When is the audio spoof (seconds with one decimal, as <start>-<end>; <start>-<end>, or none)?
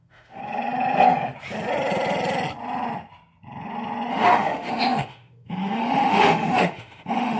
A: 0.0-0.4; 4.1-7.4